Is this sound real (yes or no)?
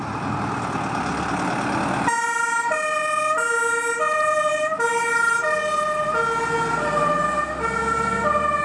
yes